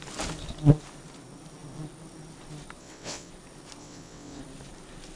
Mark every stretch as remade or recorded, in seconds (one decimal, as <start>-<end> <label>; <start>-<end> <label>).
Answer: 0.0-2.8 recorded; 2.8-3.3 remade; 3.3-3.8 recorded; 3.8-4.4 remade; 4.4-5.2 recorded